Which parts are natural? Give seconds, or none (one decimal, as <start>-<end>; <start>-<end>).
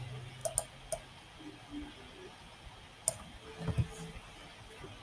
0.0-5.0